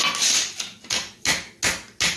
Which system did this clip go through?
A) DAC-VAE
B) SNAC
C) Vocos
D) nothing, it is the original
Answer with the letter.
D